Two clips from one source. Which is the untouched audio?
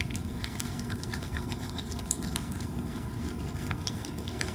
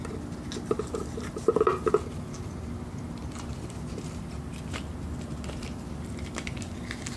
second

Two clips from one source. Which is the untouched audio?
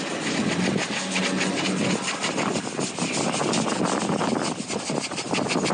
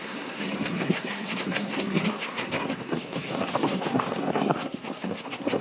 first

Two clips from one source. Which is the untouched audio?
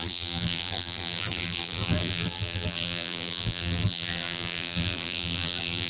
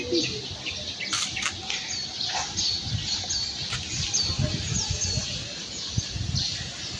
second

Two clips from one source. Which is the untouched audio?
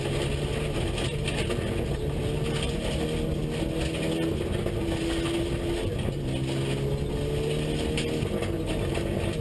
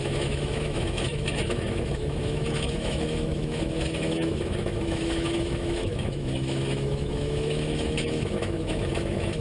first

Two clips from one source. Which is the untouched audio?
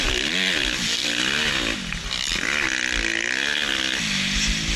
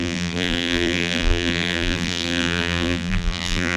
first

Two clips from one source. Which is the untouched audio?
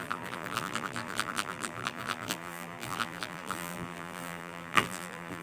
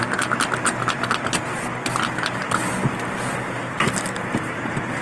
second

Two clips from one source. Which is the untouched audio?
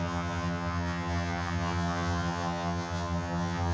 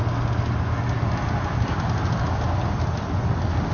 second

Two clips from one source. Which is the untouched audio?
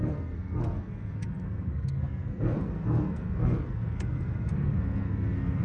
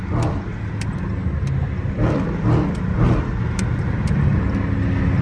second